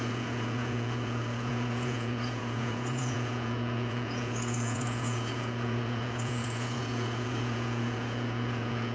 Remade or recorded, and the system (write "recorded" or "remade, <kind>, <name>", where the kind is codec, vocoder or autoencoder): remade, vocoder, Vocos